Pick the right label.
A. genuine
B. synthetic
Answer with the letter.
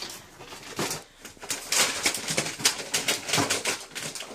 A